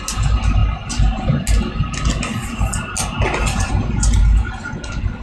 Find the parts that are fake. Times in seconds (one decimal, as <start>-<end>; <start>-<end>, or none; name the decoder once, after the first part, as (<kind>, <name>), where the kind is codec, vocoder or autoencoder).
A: none